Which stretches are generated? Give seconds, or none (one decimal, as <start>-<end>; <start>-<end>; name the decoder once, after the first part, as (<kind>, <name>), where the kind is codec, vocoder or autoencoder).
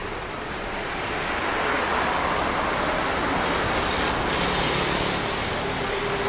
0.0-1.3 (vocoder, BigVGAN v2); 1.9-3.3